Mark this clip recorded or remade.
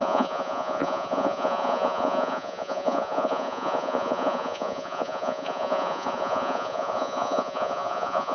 remade